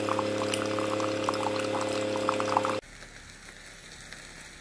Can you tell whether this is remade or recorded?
recorded